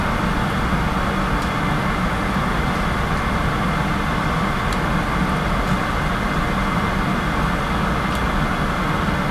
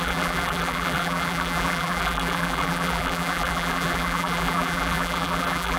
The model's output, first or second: second